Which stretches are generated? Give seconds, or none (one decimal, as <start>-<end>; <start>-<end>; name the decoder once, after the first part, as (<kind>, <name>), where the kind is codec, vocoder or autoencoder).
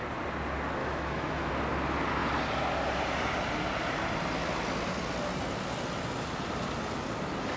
0.8-1.5 (autoencoder, DAC-VAE)